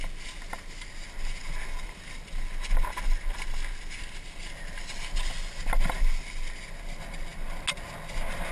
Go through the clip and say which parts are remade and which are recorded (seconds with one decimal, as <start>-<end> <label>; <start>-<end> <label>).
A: 0.0-8.5 recorded